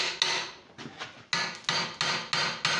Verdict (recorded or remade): recorded